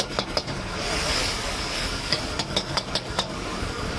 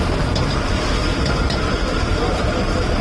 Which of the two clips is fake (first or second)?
first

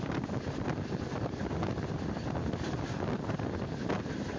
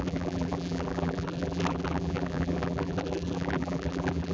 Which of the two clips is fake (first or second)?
second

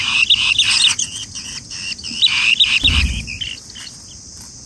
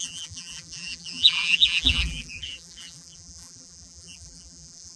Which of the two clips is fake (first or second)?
second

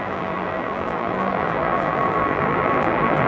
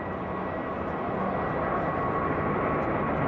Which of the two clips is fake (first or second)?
first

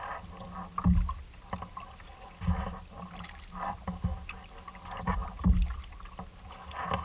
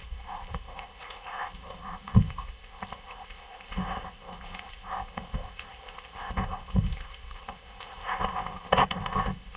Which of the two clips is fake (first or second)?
second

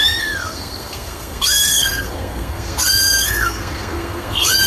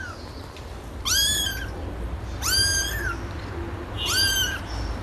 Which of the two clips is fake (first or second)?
first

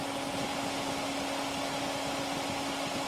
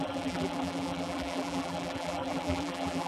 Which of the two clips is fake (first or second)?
second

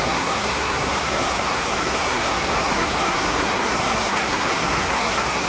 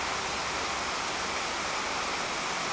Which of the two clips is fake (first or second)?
first